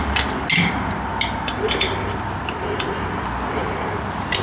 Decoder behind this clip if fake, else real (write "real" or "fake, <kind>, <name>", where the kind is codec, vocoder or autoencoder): real